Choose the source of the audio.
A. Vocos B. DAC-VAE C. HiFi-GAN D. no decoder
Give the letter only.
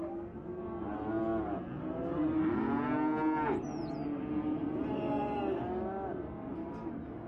D